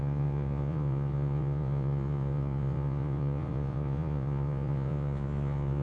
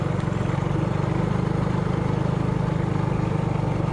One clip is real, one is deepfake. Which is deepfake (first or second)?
first